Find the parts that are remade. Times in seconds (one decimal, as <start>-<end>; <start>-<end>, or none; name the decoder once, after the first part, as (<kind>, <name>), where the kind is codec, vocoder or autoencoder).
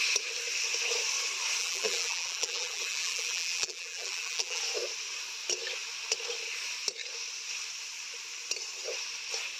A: 1.6-4.6 (vocoder, BigVGAN v2)